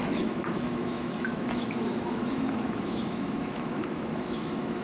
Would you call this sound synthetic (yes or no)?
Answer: yes